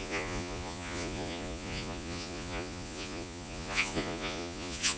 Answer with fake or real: fake